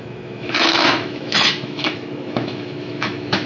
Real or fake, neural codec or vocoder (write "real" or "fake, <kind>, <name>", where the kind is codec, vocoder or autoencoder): fake, autoencoder, DAC-VAE